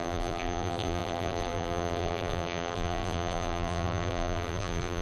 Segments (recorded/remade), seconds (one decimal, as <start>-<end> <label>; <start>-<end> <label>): 0.0-5.0 remade